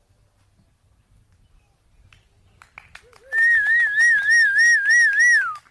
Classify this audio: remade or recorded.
recorded